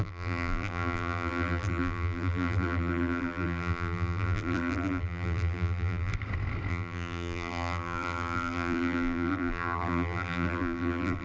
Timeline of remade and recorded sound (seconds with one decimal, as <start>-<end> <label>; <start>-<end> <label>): 0.0-6.1 remade; 6.1-6.7 recorded; 6.7-11.2 remade